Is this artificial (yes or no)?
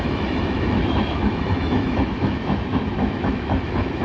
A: yes